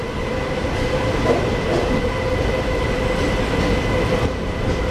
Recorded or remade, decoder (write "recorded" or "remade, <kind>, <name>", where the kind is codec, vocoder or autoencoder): recorded